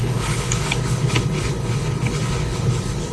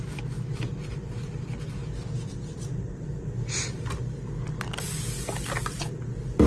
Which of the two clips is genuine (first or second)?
second